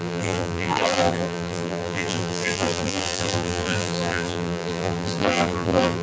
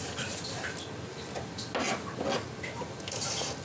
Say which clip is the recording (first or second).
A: second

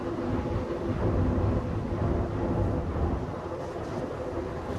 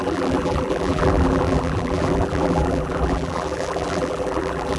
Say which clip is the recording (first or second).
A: first